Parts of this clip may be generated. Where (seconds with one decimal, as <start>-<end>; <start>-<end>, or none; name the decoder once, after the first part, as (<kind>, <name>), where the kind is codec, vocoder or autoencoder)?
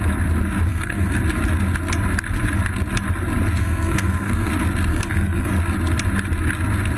0.7-1.2 (codec, SNAC); 3.6-4.5; 4.9-5.5